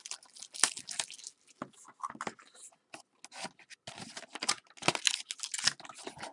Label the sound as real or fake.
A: real